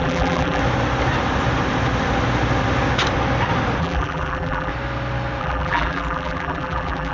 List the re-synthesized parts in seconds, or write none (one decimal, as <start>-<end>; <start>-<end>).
0.0-0.6; 3.8-4.7; 5.4-7.1